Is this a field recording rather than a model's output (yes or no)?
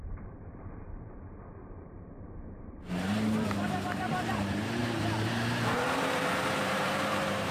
no